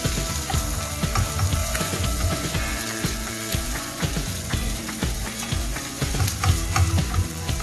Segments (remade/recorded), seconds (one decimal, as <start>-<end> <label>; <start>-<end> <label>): 0.0-1.6 recorded; 1.6-6.2 remade; 6.2-7.0 recorded; 7.0-7.6 remade